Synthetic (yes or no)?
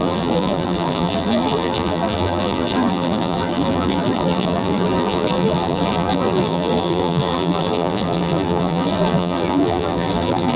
yes